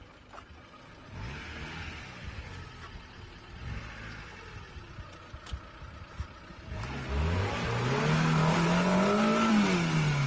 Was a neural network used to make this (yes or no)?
no